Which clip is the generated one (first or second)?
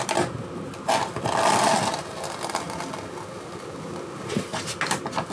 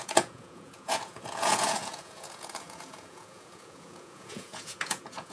second